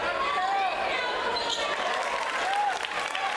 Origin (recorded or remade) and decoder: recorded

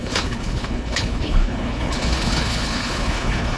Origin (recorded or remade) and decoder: remade, codec, HILCodec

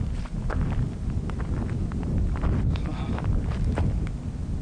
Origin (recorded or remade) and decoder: recorded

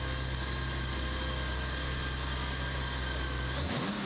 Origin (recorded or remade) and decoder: recorded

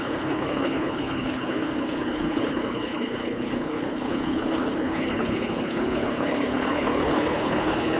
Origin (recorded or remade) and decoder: remade, codec, HILCodec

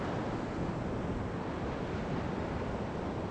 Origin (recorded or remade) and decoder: recorded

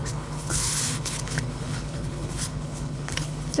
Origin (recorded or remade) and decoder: remade, codec, HILCodec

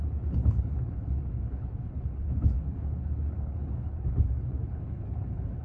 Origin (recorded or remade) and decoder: remade, codec, HILCodec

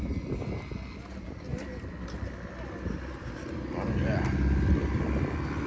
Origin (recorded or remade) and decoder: recorded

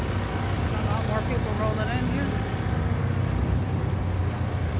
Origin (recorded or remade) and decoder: recorded